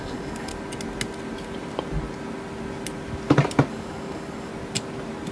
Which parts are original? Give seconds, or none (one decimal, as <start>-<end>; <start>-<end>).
0.5-3.7; 4.5-5.3